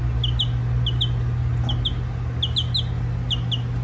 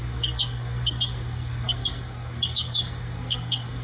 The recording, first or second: first